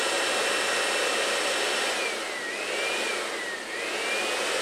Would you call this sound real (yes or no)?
yes